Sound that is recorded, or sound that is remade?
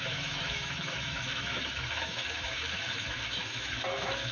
remade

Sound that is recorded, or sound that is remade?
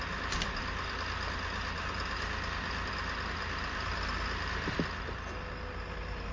recorded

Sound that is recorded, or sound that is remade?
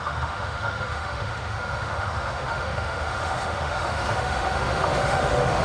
remade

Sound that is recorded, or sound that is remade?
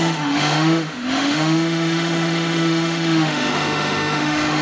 remade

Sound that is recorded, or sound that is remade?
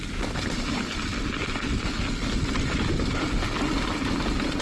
recorded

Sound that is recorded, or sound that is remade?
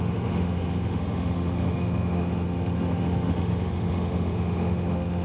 remade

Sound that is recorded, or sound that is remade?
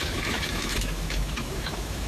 remade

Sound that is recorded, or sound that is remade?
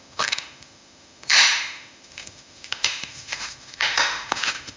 remade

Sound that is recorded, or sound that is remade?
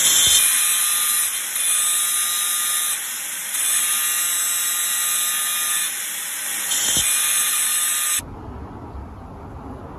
recorded